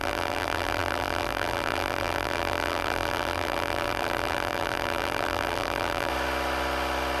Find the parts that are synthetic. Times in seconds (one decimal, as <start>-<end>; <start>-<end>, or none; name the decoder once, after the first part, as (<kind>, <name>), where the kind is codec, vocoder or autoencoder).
0.0-6.1 (vocoder, BigVGAN v2)